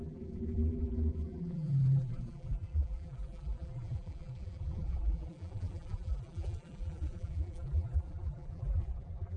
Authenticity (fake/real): fake